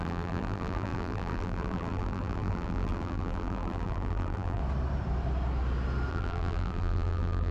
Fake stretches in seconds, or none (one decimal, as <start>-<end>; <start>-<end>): 0.0-4.6; 6.1-7.5